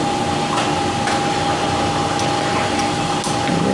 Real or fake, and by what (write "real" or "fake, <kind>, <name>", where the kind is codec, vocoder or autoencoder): real